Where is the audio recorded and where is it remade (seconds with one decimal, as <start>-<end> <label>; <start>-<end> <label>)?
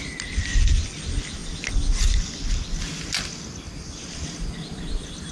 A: 0.0-5.3 recorded